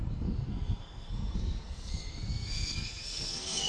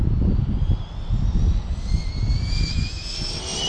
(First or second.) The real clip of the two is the second